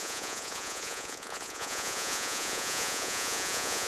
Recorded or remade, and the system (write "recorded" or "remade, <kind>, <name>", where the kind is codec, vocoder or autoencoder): remade, vocoder, Vocos